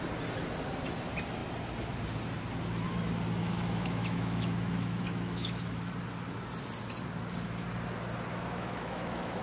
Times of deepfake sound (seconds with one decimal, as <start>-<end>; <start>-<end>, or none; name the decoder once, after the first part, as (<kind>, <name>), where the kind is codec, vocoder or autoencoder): 3.4-5.9 (autoencoder, DAC-VAE); 8.3-9.4